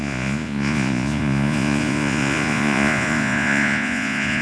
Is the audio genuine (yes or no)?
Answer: no